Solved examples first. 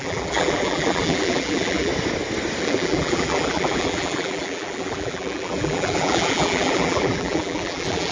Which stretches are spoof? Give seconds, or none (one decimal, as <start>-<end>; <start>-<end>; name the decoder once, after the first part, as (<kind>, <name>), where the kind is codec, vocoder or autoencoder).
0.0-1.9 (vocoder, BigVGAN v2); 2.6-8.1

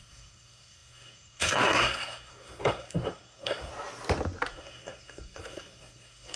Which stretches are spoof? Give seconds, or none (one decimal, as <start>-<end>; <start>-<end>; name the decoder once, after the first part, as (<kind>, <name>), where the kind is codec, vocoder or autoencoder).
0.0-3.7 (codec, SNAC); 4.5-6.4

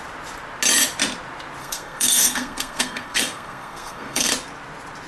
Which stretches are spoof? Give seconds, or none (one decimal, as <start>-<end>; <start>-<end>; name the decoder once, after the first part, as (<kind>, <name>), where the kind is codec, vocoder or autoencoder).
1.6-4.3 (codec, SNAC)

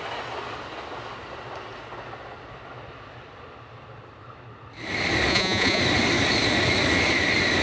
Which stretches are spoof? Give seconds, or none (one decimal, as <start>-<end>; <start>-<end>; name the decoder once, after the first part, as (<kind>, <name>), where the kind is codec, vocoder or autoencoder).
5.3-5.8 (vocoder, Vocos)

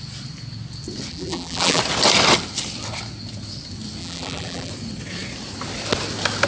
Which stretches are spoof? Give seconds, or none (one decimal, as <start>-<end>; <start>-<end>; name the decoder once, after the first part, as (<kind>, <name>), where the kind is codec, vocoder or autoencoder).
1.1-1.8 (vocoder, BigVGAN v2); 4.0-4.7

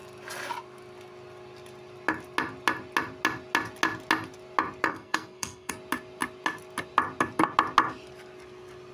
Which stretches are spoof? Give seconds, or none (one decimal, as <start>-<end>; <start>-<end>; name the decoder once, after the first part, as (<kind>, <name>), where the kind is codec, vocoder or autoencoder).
4.9-5.7 (codec, SNAC)

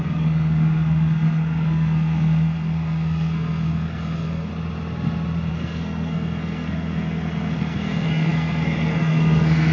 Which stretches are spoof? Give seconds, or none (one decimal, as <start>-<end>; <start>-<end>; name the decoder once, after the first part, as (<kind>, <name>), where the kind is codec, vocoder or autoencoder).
0.0-4.5 (codec, SNAC); 5.5-9.7

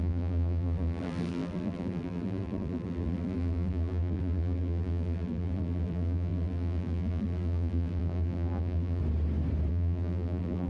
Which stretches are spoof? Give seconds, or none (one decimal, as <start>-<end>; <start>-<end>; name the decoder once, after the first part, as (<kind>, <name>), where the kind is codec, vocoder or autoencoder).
0.0-9.0 (vocoder, BigVGAN v2); 9.7-10.7